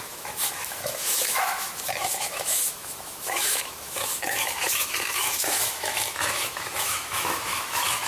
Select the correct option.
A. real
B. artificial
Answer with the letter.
B